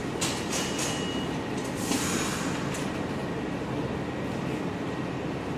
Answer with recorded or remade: recorded